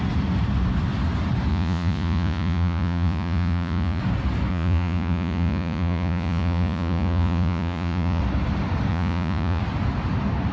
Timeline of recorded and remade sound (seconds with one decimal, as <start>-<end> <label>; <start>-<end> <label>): 0.0-1.5 recorded; 1.5-4.0 remade; 4.0-4.5 recorded; 4.5-8.2 remade; 8.2-8.9 recorded; 8.9-9.6 remade; 9.6-10.5 recorded